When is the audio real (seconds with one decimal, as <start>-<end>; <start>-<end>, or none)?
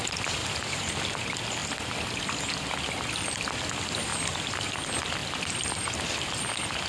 0.0-0.4; 1.0-6.9